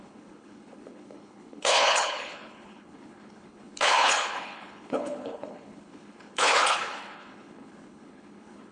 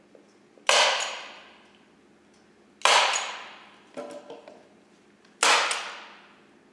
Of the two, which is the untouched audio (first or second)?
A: second